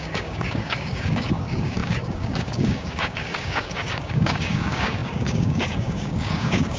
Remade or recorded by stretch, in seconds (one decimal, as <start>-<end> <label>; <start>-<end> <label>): 0.0-6.8 remade